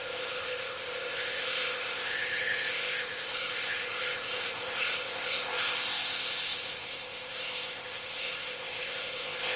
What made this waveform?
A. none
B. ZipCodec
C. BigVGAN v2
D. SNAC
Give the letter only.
B